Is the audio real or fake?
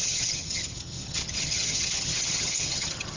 fake